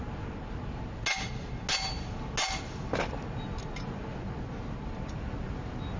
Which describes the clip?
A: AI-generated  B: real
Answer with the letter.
B